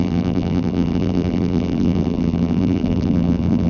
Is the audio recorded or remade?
remade